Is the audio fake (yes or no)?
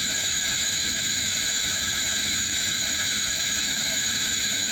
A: yes